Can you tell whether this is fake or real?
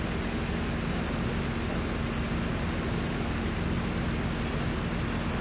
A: real